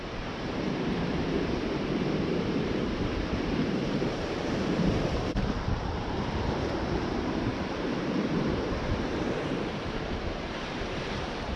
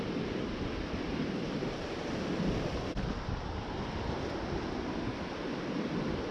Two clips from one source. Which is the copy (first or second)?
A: first